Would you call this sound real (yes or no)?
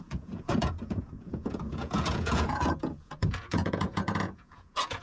no